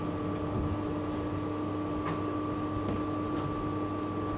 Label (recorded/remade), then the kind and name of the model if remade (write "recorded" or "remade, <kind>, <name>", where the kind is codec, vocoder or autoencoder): recorded